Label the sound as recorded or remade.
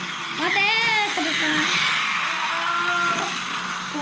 recorded